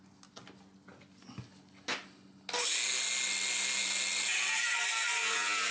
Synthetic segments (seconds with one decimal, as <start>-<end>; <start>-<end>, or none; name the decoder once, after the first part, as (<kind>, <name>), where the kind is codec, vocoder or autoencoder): none